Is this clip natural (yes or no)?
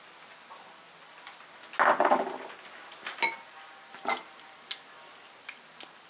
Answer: yes